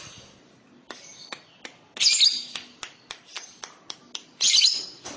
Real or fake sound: real